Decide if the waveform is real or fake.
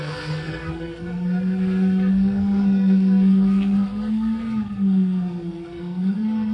fake